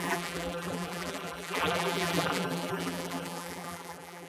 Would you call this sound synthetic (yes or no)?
yes